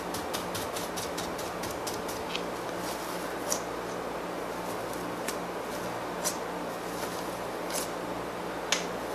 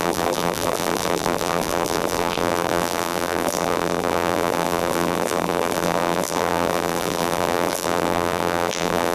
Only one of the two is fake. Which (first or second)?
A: second